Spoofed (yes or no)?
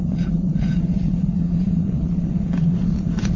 yes